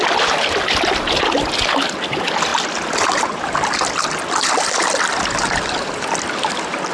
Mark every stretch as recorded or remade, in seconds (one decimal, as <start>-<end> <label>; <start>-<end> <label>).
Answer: 0.0-6.9 recorded